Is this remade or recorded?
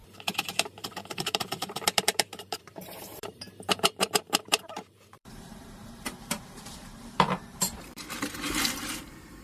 remade